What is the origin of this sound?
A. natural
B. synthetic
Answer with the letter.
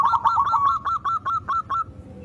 A